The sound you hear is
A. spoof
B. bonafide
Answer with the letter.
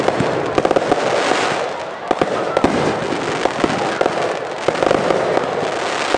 B